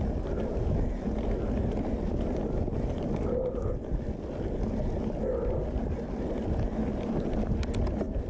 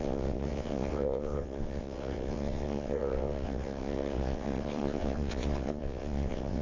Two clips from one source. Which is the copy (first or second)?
second